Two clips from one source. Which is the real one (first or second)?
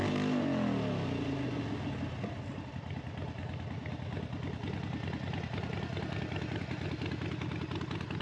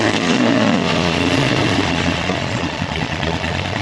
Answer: first